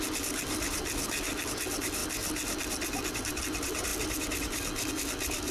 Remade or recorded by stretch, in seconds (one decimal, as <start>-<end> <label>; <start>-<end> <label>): 0.0-5.5 recorded